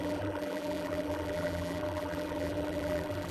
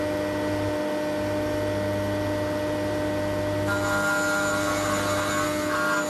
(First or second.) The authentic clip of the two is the second